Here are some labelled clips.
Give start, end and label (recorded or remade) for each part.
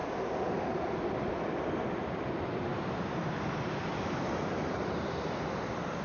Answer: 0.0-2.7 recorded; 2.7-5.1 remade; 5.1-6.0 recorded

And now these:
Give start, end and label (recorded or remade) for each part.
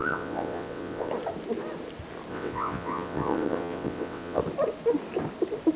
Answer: 0.0-1.1 remade; 1.1-2.3 recorded; 2.3-4.4 remade; 4.4-5.8 recorded